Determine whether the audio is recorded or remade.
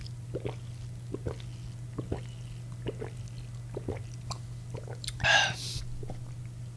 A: recorded